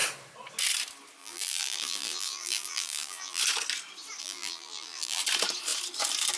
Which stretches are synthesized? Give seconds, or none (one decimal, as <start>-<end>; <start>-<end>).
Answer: 1.2-3.4; 4.2-5.2